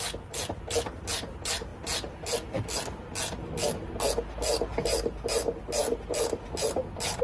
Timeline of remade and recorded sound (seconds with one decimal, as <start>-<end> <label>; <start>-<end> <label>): 0.0-7.2 recorded